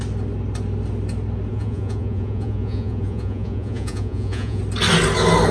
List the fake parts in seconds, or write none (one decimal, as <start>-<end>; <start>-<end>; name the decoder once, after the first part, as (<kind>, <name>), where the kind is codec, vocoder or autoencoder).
1.5-4.6 (vocoder, Vocos)